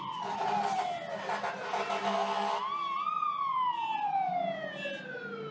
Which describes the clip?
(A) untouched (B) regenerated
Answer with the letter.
A